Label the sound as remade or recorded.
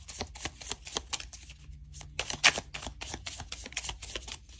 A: recorded